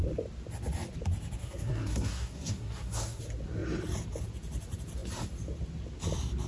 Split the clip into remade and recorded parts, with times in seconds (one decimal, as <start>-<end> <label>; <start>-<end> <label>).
0.0-1.4 recorded; 1.4-3.2 remade; 3.2-6.5 recorded